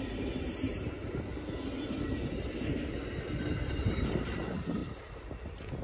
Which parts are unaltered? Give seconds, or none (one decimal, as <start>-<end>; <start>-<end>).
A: 0.0-5.8